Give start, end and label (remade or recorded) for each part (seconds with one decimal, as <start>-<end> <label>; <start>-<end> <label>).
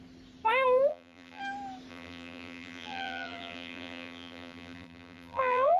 0.0-0.9 recorded; 0.9-1.4 remade; 1.4-1.9 recorded; 1.9-5.8 remade